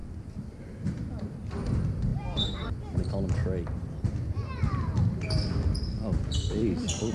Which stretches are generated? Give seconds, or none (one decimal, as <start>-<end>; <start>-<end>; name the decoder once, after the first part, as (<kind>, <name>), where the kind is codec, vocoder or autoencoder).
0.0-3.4 (vocoder, BigVGAN v2); 4.6-7.1